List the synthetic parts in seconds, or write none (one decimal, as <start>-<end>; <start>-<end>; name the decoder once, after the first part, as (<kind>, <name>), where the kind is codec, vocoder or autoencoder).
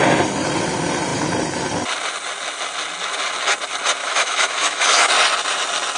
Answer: 4.0-5.1 (autoencoder, DAC-VAE)